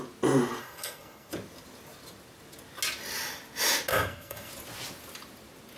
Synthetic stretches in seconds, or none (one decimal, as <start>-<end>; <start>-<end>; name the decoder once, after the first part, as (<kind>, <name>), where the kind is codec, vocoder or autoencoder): 0.6-1.3 (codec, SNAC); 3.9-4.5